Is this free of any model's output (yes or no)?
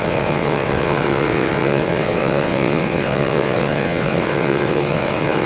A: no